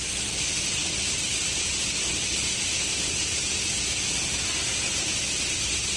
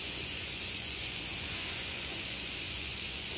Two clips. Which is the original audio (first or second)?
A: first